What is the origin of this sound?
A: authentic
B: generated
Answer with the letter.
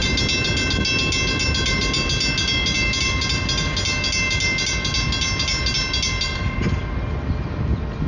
A